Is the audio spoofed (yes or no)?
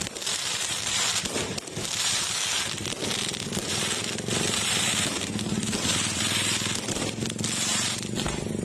yes